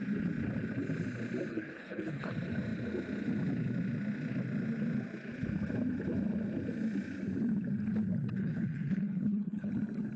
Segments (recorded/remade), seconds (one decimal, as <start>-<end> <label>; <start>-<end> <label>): 0.0-1.5 recorded; 1.5-2.3 remade; 2.3-8.4 recorded; 8.4-9.7 remade; 9.7-10.2 recorded